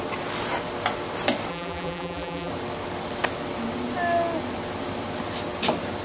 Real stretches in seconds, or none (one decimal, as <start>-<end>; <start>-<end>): 0.0-1.5; 2.5-6.0